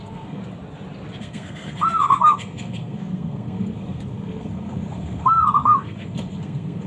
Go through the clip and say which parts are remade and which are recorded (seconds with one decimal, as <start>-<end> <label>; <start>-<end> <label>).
0.0-0.4 remade; 0.4-1.2 recorded; 1.2-6.9 remade